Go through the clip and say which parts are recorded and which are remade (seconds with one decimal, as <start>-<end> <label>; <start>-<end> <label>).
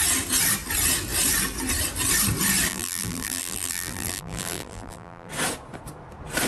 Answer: 0.0-2.7 recorded; 2.7-5.3 remade; 5.3-6.5 recorded